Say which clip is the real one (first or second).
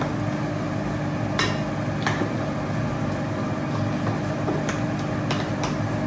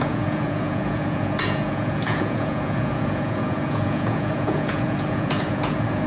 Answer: first